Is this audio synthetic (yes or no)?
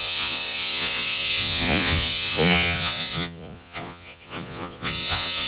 yes